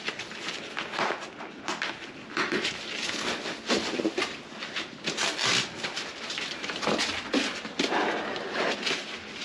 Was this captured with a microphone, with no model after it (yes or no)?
yes